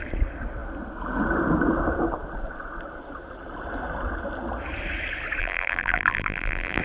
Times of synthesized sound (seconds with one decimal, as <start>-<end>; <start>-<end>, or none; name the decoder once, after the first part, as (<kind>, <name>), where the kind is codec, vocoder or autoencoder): 5.4-6.8 (vocoder, BigVGAN v2)